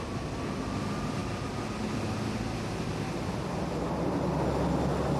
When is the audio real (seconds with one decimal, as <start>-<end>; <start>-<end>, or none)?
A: 0.0-5.2